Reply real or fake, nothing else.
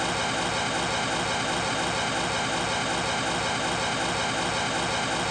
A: real